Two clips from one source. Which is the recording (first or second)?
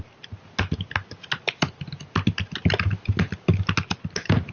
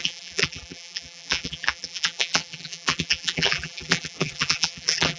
first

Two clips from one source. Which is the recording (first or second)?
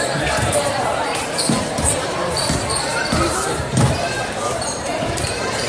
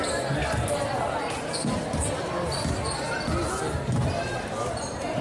second